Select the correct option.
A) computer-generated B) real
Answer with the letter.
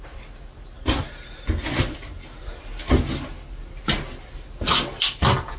B